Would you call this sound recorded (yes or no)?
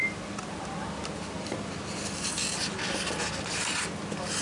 yes